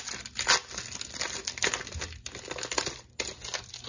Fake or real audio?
real